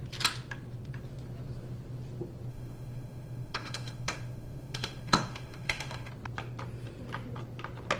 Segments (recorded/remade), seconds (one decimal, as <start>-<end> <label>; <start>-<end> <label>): 0.0-2.5 recorded; 2.5-6.1 remade; 6.1-8.0 recorded